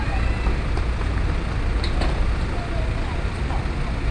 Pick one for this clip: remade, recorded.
recorded